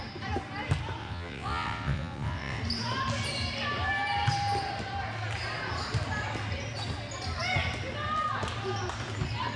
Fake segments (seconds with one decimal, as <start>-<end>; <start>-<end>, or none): 1.0-2.6

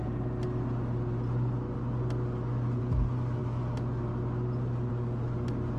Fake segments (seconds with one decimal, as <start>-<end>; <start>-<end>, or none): none

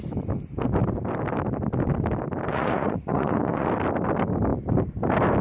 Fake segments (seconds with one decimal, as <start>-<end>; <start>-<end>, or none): 2.5-3.7